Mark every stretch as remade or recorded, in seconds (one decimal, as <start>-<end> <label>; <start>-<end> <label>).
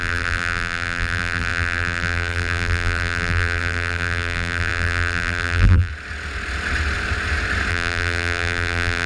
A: 0.0-5.9 remade; 5.9-7.7 recorded; 7.7-9.1 remade